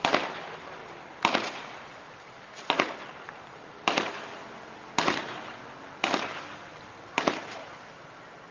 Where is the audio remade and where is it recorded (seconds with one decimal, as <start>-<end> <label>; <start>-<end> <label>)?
0.0-0.8 recorded; 0.8-4.1 remade; 4.1-8.5 recorded